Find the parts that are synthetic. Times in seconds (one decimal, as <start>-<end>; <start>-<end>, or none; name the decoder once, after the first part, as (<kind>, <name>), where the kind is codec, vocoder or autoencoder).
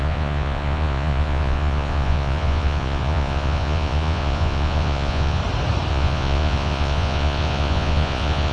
0.0-5.4 (vocoder, Vocos); 5.9-8.5